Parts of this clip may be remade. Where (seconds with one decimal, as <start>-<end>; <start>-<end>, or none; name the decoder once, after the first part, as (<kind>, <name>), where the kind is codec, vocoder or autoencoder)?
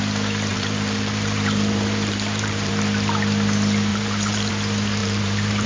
0.5-2.7 (vocoder, BigVGAN v2); 3.9-4.5; 5.0-5.7